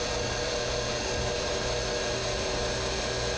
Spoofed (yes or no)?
no